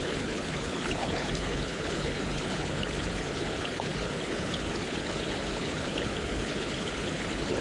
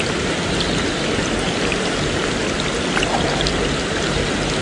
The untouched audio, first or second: second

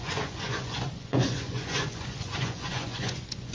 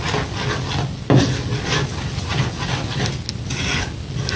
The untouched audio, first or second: second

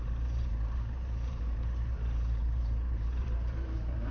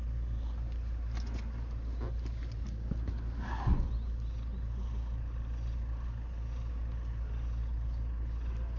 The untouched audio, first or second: second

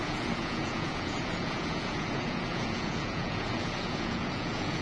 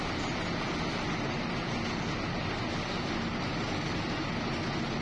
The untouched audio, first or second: second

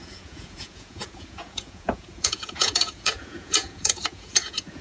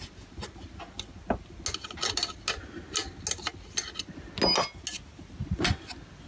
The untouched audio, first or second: second